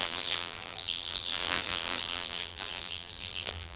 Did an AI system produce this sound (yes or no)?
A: yes